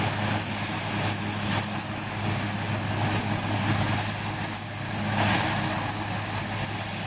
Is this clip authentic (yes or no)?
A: yes